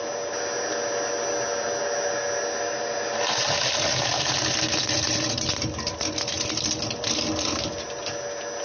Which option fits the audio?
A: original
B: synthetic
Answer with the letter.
A